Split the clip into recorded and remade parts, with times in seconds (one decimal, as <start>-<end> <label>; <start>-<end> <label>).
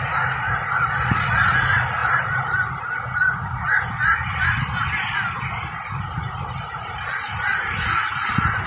0.0-2.0 recorded; 2.0-2.8 remade; 2.8-8.7 recorded